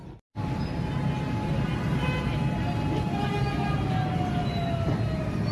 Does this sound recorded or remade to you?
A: recorded